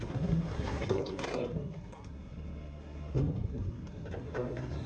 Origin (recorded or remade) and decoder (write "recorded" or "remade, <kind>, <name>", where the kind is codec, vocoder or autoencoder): remade, codec, SNAC